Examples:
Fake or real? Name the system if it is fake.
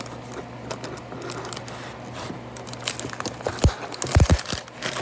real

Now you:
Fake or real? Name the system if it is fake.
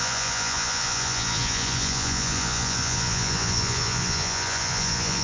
fake, vocoder, Vocos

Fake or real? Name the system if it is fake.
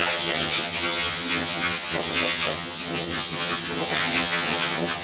fake, vocoder, HiFi-GAN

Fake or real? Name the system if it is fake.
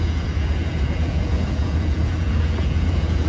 fake, vocoder, Vocos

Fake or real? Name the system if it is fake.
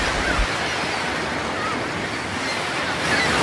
real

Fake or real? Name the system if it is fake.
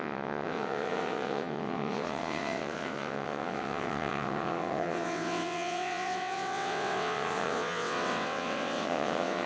fake, vocoder, WaveNeXt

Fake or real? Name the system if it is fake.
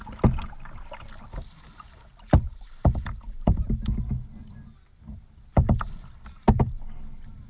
real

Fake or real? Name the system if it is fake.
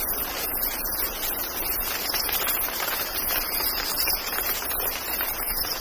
fake, vocoder, BigVGAN v2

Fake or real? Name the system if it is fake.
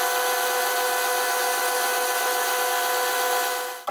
real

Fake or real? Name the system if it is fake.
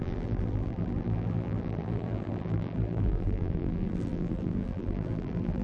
fake, vocoder, BigVGAN v2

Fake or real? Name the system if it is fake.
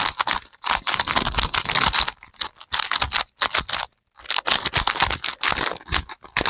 real